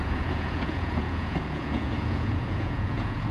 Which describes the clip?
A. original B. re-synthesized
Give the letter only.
B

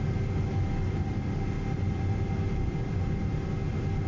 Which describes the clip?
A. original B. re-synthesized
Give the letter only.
A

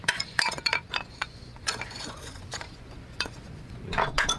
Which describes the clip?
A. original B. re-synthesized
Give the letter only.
B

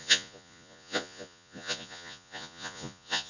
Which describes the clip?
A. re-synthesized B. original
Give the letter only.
A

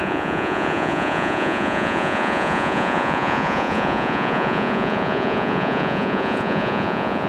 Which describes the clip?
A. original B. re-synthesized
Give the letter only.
B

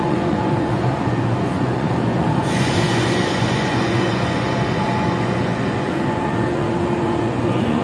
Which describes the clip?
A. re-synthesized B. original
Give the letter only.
A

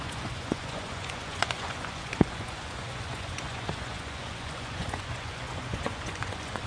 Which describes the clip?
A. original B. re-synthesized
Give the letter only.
B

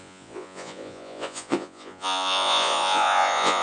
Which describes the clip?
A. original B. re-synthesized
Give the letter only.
B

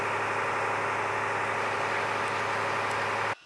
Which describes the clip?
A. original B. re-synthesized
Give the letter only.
A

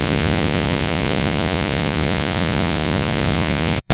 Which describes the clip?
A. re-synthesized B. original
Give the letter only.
A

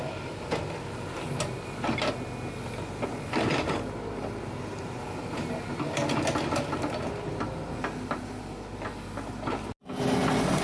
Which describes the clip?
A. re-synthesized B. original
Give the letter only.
B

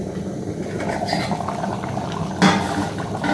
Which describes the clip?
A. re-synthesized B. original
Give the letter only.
B